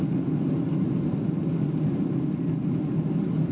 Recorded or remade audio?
recorded